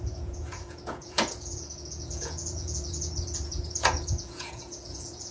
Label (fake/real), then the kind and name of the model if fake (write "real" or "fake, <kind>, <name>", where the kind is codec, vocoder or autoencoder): fake, vocoder, Vocos